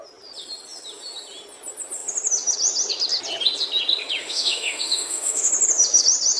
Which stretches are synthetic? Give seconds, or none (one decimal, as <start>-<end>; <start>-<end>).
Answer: 4.2-5.5